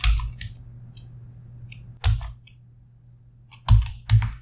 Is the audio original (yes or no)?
yes